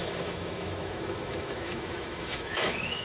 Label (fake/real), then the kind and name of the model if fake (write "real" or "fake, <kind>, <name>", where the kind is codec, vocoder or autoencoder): fake, autoencoder, DAC-VAE